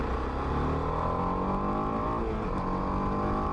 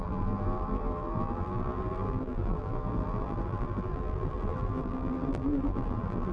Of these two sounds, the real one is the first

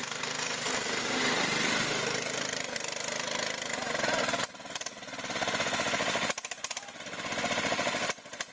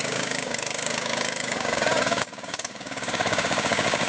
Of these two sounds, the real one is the first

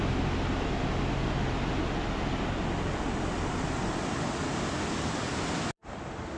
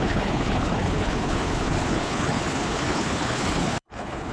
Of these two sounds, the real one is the first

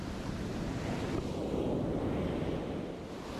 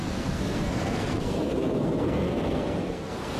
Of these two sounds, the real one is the first